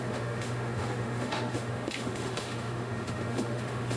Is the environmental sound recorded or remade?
remade